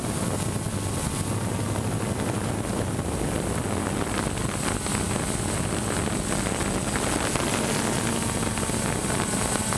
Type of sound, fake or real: real